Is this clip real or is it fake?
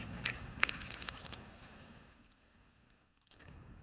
fake